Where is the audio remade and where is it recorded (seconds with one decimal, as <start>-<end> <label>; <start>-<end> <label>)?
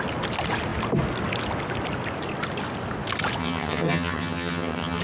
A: 0.0-3.4 recorded; 3.4-5.0 remade